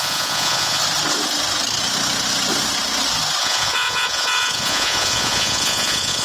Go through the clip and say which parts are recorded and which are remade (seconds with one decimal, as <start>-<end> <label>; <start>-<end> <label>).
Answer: 0.0-0.8 remade; 0.8-3.4 recorded; 3.4-6.2 remade